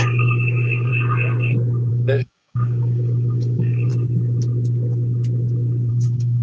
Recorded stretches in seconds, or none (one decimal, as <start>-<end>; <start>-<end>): 0.9-1.9; 3.9-5.9